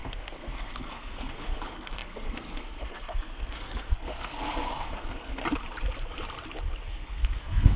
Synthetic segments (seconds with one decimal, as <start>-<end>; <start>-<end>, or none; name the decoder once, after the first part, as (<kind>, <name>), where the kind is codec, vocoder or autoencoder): 0.0-5.4 (codec, SNAC); 6.9-7.8